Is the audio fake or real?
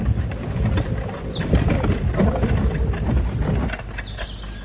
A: real